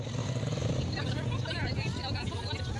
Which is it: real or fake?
real